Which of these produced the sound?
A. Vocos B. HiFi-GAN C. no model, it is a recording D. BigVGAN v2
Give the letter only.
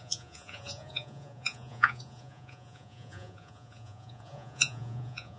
A